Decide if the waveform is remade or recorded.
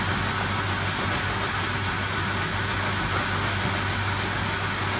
recorded